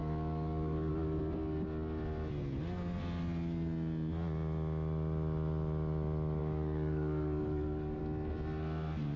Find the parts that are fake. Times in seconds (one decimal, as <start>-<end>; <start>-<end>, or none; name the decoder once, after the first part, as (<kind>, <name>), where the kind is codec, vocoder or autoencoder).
0.0-0.9 (codec, DAC); 6.4-8.0